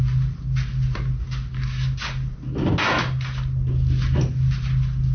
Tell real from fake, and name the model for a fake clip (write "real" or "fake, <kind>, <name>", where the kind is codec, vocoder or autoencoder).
real